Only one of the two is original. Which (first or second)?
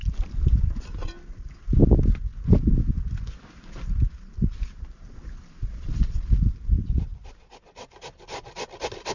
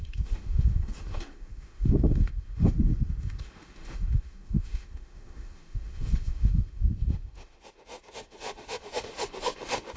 first